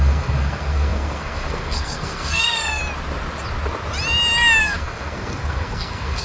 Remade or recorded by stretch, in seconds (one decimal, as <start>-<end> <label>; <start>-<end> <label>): 0.0-2.8 remade; 2.8-4.6 recorded; 4.6-6.2 remade